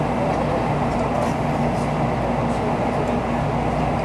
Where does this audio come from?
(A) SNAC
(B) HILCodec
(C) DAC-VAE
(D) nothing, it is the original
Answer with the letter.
D